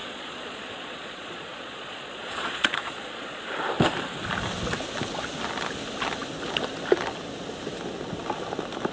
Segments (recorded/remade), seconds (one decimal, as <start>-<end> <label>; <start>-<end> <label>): 0.0-3.4 remade; 3.4-8.9 recorded